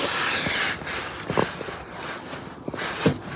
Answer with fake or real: real